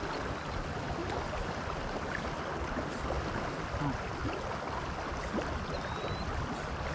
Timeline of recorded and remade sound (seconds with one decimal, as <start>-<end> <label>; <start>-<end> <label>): 0.0-6.9 recorded